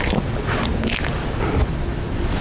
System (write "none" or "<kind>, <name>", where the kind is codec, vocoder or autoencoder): none